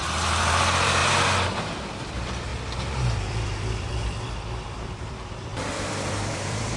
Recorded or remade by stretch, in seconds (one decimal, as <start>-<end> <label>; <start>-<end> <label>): 0.0-1.0 remade; 1.0-1.8 recorded; 1.8-6.8 remade